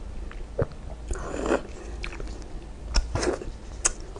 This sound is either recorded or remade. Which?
recorded